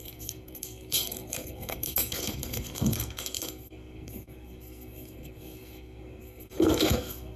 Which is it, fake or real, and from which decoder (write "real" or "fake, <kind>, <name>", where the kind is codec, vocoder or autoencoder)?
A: fake, codec, SNAC